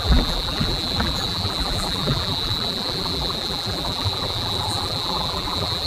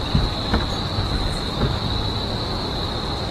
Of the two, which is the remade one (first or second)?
first